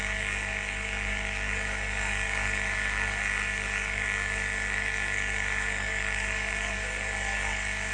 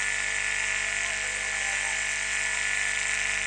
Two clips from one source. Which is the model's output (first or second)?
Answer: first